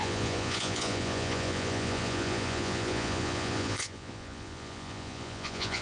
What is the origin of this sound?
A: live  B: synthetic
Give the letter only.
B